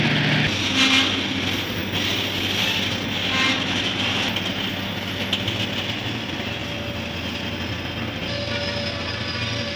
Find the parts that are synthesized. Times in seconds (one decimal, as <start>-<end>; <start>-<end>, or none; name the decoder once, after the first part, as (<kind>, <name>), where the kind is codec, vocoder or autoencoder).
none